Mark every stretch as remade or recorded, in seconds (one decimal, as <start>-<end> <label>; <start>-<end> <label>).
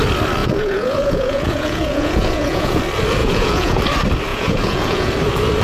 0.0-0.4 recorded; 0.4-2.8 remade; 2.8-3.2 recorded; 3.2-3.8 remade; 3.8-4.3 recorded; 4.3-5.1 remade; 5.1-5.6 recorded